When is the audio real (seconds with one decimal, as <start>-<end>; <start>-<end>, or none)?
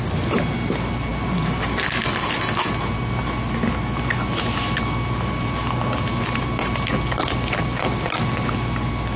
0.0-9.2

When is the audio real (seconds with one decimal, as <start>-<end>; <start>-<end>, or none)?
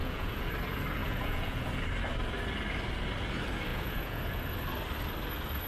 0.5-1.0; 1.7-3.7; 4.4-5.7